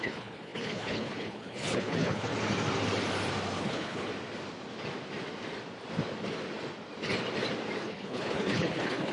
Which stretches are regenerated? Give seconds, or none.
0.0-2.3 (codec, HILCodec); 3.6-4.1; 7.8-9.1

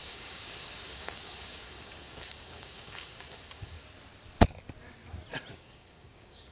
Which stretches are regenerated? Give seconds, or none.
0.0-3.8 (codec, DAC); 5.5-6.5

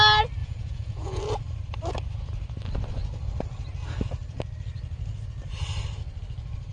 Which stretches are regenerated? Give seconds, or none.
0.4-1.2 (vocoder, Vocos)

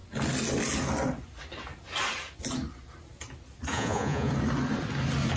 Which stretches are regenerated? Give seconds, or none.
3.7-4.3 (vocoder, Vocos)

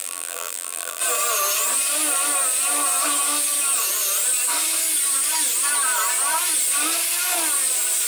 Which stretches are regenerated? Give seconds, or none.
0.0-1.0 (vocoder, BigVGAN v2)

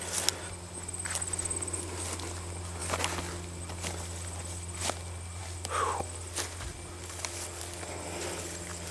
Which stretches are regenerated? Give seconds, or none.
none